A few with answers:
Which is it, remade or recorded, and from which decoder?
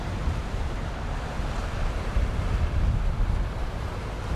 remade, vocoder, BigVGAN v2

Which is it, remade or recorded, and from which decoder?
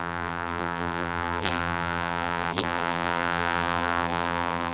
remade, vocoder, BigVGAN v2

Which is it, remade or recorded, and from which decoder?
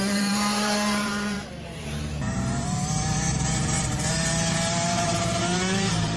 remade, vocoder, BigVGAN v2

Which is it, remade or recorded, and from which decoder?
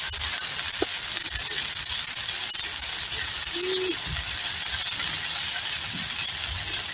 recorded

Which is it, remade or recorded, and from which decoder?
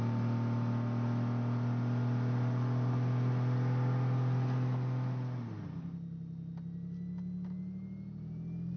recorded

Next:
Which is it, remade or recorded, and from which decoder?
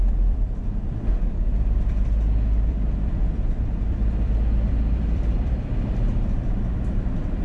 remade, vocoder, BigVGAN v2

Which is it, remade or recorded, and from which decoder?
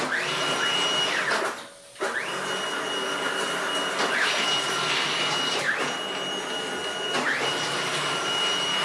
recorded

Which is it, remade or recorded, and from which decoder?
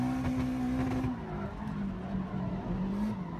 recorded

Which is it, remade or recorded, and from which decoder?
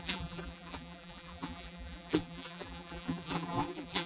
remade, vocoder, BigVGAN v2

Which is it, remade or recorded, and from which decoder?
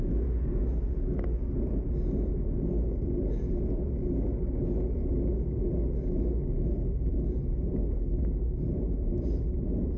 recorded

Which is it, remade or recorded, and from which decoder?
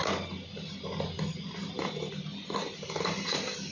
recorded